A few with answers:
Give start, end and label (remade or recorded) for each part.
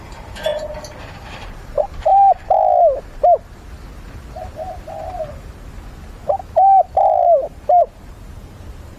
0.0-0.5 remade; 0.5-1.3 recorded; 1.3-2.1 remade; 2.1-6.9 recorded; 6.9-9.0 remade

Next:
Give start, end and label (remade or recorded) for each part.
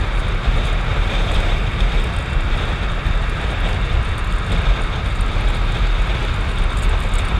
0.0-0.9 recorded; 0.9-1.6 remade; 1.6-7.4 recorded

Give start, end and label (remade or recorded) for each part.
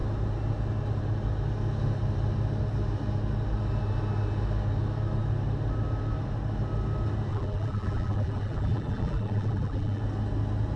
0.0-7.3 recorded; 7.3-10.0 remade; 10.0-10.8 recorded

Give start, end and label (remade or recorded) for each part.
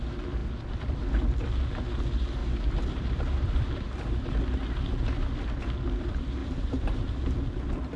0.0-2.4 recorded; 2.4-4.4 remade; 4.4-6.4 recorded; 6.4-7.0 remade; 7.0-8.0 recorded